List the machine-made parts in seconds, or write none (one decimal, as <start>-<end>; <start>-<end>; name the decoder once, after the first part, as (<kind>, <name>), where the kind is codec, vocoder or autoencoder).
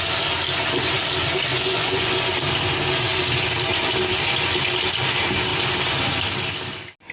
1.5-2.3 (vocoder, Vocos)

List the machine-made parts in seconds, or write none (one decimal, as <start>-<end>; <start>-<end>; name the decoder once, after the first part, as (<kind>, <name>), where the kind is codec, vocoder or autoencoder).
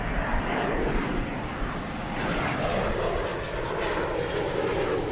none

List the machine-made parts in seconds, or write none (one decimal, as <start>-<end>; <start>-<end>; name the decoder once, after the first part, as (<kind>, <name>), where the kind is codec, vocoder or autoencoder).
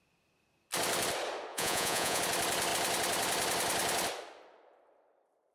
1.5-2.2 (vocoder, Vocos)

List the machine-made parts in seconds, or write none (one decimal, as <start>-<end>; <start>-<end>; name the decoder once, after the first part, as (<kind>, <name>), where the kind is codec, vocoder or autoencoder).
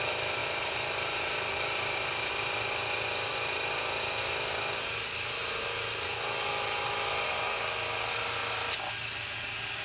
0.4-2.3 (vocoder, BigVGAN v2)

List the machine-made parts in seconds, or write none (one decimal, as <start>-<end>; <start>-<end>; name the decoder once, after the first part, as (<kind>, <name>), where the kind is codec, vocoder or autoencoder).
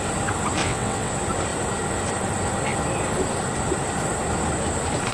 0.6-1.1 (vocoder, WaveNeXt)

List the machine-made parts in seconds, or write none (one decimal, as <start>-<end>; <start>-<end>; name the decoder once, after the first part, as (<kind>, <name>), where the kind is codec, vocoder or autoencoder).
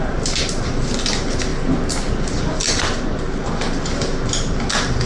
none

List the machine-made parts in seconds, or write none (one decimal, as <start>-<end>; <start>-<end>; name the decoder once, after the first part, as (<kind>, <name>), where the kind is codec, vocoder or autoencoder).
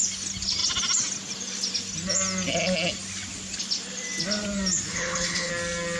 4.9-5.5 (codec, HILCodec)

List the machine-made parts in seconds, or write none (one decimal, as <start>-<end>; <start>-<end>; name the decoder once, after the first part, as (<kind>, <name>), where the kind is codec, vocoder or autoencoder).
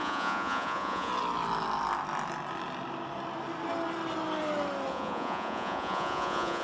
0.0-1.1 (vocoder, Vocos); 4.9-6.6